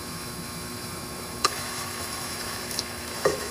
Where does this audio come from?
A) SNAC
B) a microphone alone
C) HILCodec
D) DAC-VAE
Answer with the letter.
D